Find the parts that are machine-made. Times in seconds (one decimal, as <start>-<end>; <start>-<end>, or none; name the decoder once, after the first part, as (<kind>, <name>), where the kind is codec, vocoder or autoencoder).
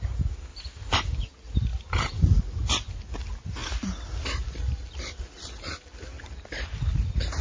0.5-1.2 (vocoder, BigVGAN v2); 1.7-2.4